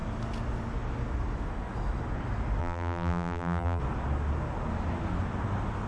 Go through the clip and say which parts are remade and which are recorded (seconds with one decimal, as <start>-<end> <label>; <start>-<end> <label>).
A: 0.0-2.6 recorded; 2.6-3.8 remade; 3.8-5.9 recorded